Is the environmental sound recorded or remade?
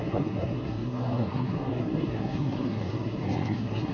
remade